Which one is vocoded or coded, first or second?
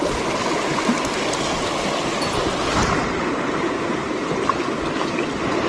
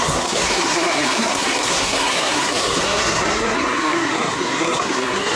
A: second